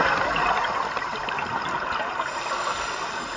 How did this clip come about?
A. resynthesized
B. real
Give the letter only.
B